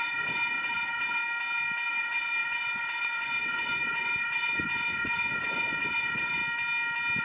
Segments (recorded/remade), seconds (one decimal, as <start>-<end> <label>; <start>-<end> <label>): 0.0-1.2 remade; 1.2-1.9 recorded; 1.9-6.4 remade; 6.4-7.2 recorded